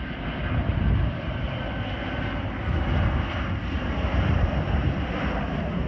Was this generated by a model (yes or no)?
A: no